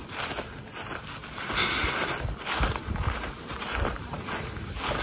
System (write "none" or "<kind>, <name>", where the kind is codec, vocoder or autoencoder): none